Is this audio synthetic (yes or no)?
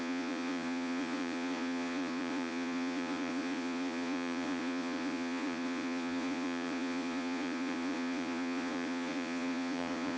yes